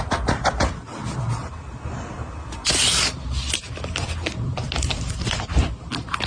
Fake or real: real